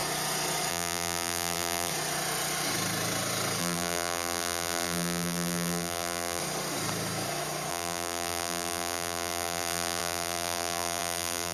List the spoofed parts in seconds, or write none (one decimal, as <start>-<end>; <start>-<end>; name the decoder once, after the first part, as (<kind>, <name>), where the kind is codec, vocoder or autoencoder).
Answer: 0.7-1.9 (vocoder, BigVGAN v2); 3.6-6.4; 7.7-11.5

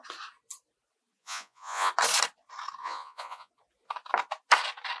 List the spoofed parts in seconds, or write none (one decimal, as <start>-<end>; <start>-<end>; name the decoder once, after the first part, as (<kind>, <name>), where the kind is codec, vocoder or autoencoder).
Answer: 1.2-1.9 (vocoder, Vocos); 2.8-3.5